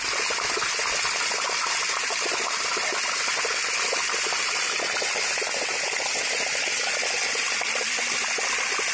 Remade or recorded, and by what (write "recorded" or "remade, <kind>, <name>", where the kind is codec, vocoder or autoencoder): recorded